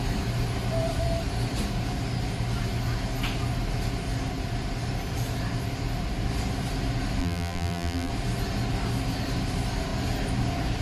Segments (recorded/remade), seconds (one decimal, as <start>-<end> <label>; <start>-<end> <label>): 0.0-7.2 recorded; 7.2-8.1 remade; 8.1-10.8 recorded